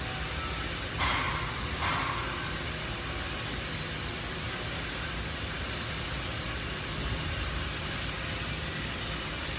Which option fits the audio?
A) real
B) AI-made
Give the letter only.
A